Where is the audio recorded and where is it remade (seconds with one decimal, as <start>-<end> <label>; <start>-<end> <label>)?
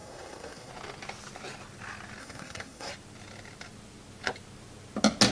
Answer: 0.0-0.7 remade; 0.7-2.2 recorded; 2.2-2.9 remade; 2.9-5.3 recorded